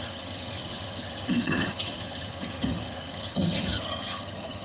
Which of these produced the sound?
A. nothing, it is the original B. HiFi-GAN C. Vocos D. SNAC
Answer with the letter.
B